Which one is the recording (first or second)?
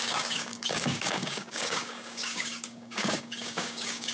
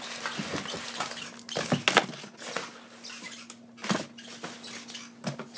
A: second